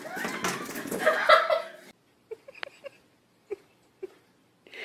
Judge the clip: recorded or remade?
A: recorded